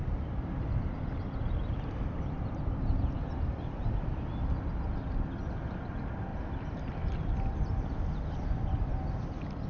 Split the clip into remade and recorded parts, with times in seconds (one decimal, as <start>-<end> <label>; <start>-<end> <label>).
0.0-6.3 recorded; 6.3-6.9 remade; 6.9-9.7 recorded